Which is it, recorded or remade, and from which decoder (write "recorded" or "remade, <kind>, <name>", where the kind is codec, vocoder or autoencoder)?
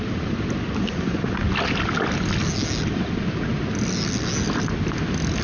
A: recorded